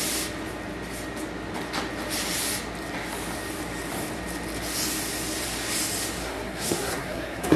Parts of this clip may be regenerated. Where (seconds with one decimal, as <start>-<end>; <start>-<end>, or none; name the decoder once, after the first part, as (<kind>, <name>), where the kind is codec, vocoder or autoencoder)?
6.2-7.6 (codec, SNAC)